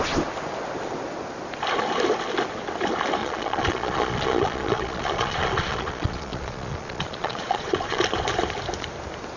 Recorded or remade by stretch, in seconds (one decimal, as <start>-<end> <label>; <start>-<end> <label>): 0.0-3.2 recorded; 3.2-8.0 remade; 8.0-9.4 recorded